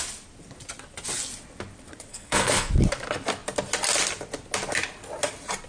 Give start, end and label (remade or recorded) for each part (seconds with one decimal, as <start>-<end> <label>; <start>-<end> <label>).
0.0-2.1 recorded; 2.1-2.7 remade; 2.7-5.7 recorded